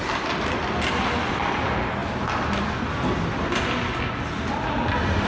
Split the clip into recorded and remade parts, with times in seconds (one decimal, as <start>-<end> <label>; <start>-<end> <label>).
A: 0.0-5.3 recorded